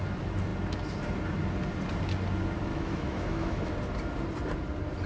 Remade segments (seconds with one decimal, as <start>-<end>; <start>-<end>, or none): 2.7-3.7